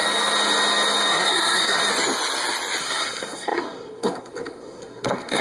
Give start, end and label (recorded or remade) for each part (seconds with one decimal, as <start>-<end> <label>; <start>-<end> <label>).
0.0-1.1 recorded; 1.1-1.8 remade; 1.8-2.8 recorded; 2.8-5.4 remade